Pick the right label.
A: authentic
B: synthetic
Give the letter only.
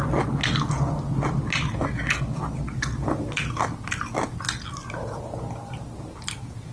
A